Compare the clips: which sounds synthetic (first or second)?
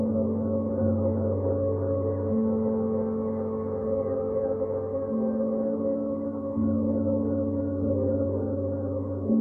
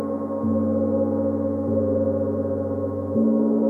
first